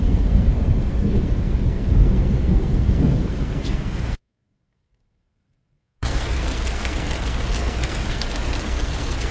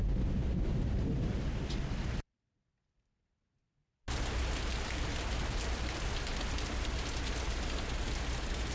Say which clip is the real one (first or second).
second